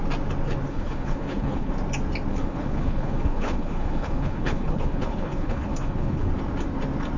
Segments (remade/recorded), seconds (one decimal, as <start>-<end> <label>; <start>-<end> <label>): 0.0-0.7 recorded; 0.7-1.7 remade; 1.7-2.3 recorded; 2.3-6.3 remade; 6.3-7.2 recorded